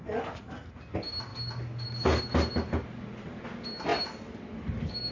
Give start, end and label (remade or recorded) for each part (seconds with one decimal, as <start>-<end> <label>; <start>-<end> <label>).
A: 0.0-5.1 recorded